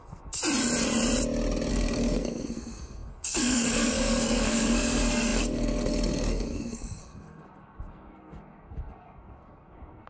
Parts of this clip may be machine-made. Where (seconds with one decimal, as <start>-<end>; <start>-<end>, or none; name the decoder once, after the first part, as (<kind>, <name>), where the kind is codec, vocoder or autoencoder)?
0.0-0.4 (codec, SNAC); 1.7-10.1